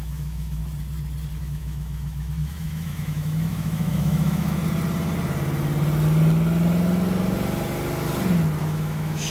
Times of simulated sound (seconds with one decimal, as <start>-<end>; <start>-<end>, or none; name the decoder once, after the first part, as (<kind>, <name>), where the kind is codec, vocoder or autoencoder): 0.0-0.6 (autoencoder, DAC-VAE); 1.4-4.6; 8.6-9.3